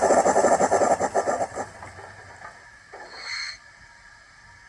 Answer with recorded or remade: recorded